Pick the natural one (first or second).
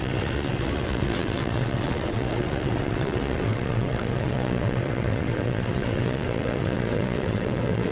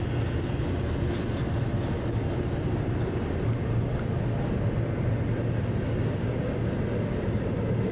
second